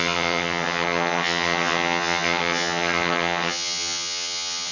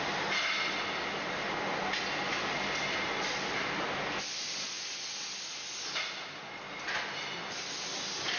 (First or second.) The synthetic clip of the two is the first